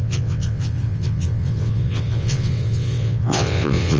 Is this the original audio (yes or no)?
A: no